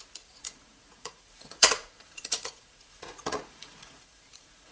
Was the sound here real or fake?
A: fake